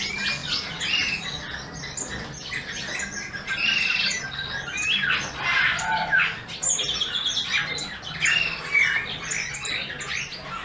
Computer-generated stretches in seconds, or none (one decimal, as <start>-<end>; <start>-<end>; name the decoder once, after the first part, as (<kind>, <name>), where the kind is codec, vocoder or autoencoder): none